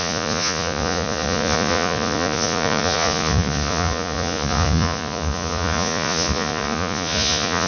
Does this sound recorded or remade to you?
remade